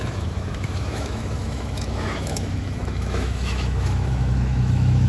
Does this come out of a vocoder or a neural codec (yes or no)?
yes